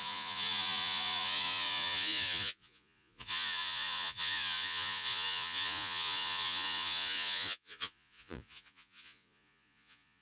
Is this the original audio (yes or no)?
no